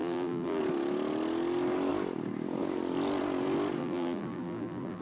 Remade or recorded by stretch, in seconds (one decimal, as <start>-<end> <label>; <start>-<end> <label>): 0.0-0.6 remade; 0.6-3.8 recorded; 3.8-5.0 remade